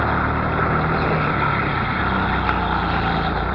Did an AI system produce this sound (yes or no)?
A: no